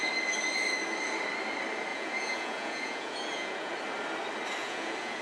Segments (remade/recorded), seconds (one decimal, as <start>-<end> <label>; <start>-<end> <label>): 0.0-1.9 recorded; 1.9-3.7 remade; 3.7-4.6 recorded; 4.6-5.2 remade